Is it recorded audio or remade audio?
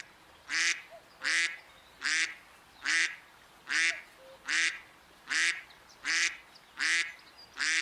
recorded